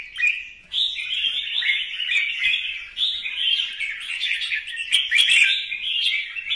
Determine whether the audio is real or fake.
real